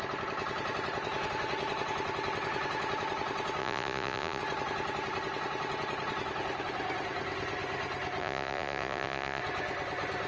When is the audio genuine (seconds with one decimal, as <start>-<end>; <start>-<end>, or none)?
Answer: 0.0-3.6; 4.4-8.2; 9.4-10.3